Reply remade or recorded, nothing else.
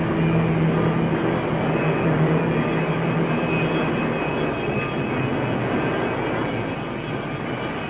recorded